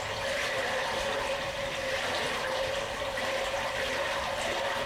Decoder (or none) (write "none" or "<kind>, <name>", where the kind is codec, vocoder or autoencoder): none